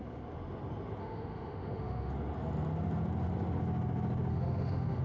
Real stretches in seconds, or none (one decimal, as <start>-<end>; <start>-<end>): 0.0-1.0; 2.1-4.3